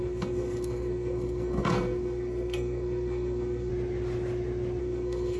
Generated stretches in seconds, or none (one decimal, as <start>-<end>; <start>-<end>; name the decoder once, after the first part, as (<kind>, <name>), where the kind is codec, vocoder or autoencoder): 0.0-3.7 (codec, SNAC); 4.8-5.4